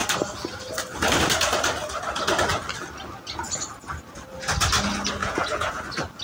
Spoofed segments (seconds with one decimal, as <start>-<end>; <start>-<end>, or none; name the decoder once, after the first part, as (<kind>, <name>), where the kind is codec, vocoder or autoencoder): 5.2-5.8 (vocoder, Vocos)